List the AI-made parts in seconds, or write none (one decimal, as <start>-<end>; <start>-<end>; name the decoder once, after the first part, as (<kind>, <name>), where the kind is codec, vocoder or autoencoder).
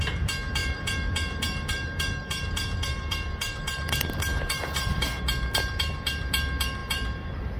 0.6-5.2 (vocoder, BigVGAN v2); 6.8-7.6